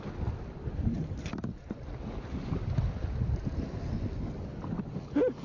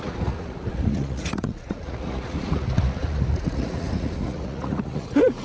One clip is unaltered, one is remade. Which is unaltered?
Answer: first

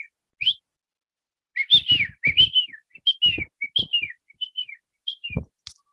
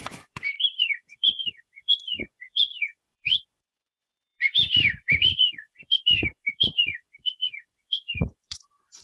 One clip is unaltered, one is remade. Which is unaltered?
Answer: first